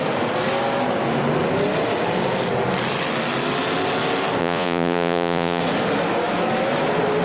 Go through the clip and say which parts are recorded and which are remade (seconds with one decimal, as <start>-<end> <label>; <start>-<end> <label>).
0.0-4.4 recorded; 4.4-5.6 remade; 5.6-7.2 recorded